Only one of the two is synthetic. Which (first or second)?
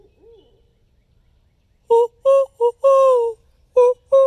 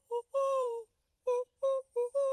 second